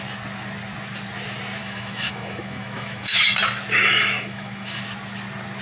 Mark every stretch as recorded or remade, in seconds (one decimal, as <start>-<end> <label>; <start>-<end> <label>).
0.0-1.6 recorded; 1.6-3.2 remade; 3.2-3.8 recorded; 3.8-4.8 remade; 4.8-5.6 recorded